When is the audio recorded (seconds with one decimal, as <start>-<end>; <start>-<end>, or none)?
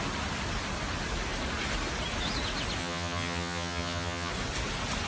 0.0-2.8; 4.3-5.1